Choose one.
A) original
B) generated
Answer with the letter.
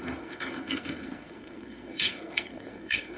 B